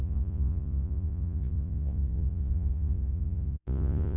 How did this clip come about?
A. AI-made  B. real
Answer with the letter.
A